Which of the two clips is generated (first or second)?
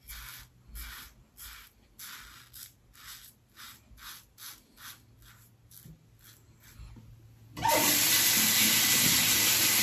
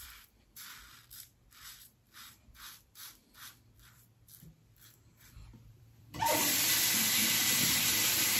second